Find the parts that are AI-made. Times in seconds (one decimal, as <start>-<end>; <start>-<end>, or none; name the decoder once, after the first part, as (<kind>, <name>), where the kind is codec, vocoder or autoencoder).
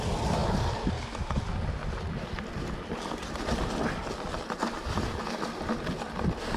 1.8-5.7 (vocoder, BigVGAN v2)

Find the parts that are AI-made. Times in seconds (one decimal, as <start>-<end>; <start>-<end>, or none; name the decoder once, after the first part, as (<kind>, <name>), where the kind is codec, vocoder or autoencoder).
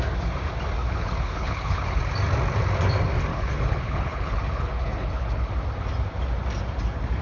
0.8-2.0 (codec, HILCodec); 3.3-5.5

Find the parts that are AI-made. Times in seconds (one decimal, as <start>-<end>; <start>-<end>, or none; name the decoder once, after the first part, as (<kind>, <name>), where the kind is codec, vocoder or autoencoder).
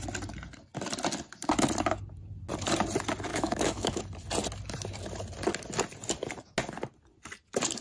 3.3-4.0 (autoencoder, DAC-VAE)